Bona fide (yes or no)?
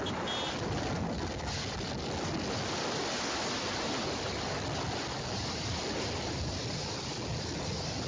yes